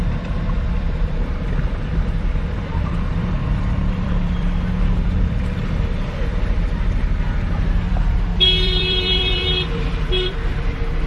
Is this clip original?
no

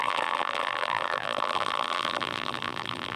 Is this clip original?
no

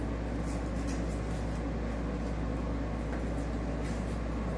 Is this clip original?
yes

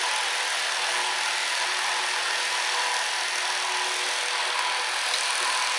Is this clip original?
yes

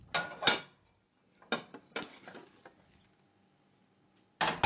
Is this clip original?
yes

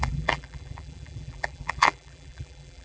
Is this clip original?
no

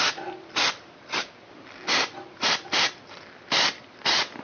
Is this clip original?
no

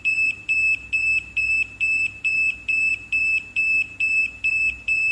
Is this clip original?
no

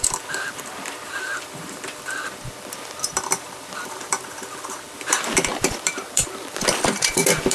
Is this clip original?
no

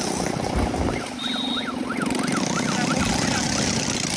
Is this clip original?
yes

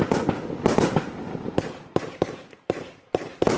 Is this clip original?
no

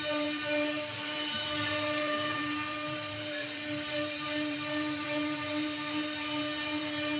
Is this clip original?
no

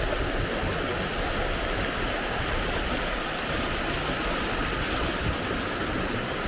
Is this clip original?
yes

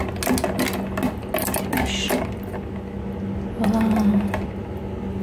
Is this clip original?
yes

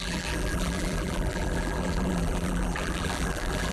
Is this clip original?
no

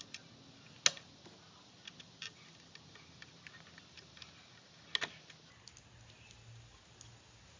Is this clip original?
yes